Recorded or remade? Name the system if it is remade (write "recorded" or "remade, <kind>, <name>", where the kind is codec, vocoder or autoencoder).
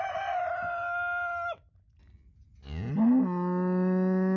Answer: recorded